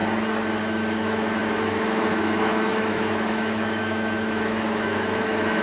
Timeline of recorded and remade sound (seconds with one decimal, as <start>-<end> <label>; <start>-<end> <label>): 0.0-0.6 recorded; 0.6-5.6 remade